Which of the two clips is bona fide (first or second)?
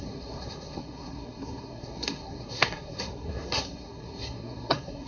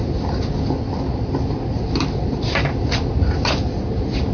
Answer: second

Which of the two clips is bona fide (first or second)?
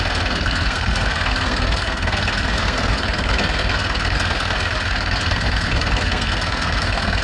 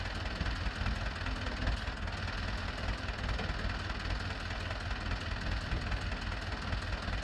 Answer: second